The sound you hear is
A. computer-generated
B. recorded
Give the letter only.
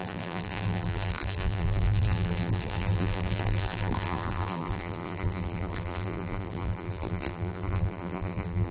A